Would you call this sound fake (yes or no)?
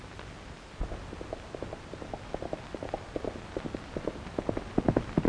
no